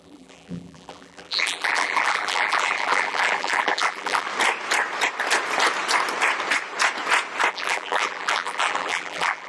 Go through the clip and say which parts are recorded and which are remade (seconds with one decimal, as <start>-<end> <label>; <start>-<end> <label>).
0.0-4.3 remade; 4.3-7.5 recorded; 7.5-9.5 remade